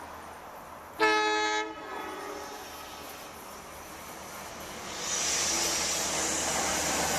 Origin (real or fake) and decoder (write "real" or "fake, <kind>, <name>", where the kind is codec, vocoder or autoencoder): real